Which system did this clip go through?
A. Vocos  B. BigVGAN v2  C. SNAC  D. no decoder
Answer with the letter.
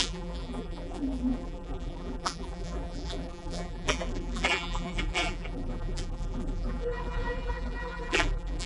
B